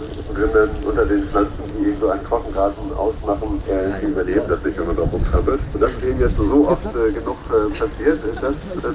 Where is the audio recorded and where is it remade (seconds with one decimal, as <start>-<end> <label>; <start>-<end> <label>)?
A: 0.0-8.9 recorded